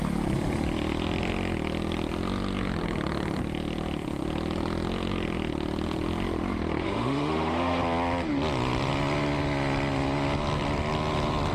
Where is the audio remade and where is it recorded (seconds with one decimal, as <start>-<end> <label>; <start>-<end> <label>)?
0.0-6.8 recorded; 6.8-7.8 remade; 7.8-11.5 recorded

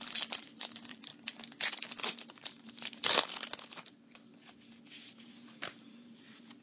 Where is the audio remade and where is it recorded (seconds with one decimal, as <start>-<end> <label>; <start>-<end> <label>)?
0.0-1.1 remade; 1.1-5.1 recorded; 5.1-6.6 remade

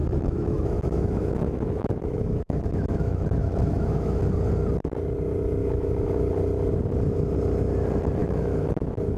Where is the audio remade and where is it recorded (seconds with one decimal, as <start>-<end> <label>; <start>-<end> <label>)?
0.0-4.2 remade; 4.2-5.6 recorded; 5.6-6.3 remade; 6.3-8.2 recorded; 8.2-9.2 remade

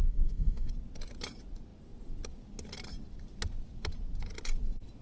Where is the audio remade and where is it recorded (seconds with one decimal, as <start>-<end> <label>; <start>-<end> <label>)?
0.0-0.7 remade; 0.7-5.0 recorded

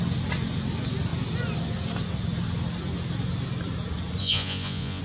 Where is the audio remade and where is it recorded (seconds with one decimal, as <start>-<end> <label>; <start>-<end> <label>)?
0.0-4.2 recorded; 4.2-5.0 remade